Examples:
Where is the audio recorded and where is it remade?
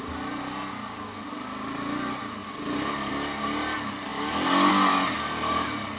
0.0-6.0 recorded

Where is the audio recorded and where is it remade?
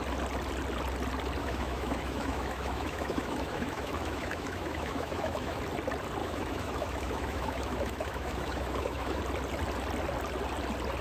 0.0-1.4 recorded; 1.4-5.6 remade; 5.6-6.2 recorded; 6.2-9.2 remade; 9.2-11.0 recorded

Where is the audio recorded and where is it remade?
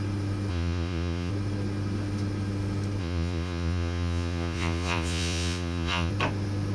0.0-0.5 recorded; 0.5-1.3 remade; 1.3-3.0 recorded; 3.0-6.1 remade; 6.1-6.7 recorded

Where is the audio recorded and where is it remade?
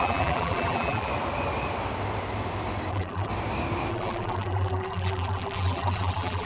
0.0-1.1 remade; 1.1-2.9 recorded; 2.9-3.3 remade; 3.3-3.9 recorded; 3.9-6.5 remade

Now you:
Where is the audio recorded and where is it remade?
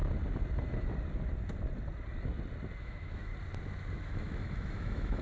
0.0-2.8 recorded; 2.8-3.3 remade; 3.3-3.9 recorded; 3.9-5.2 remade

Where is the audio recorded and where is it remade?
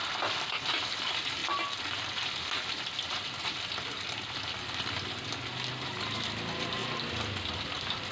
0.0-8.1 recorded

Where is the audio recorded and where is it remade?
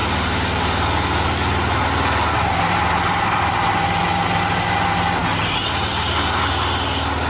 0.0-7.3 recorded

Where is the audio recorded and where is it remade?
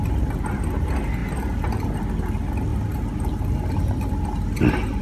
0.0-5.0 recorded